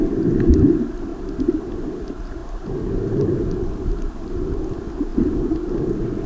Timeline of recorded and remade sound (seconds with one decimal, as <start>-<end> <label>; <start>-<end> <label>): 0.0-5.1 recorded; 5.1-5.7 remade; 5.7-6.3 recorded